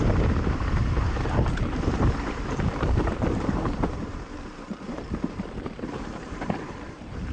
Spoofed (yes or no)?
yes